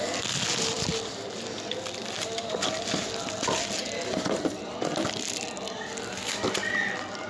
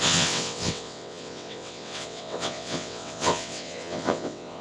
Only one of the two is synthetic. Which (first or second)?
second